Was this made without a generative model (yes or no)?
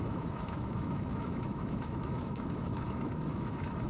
no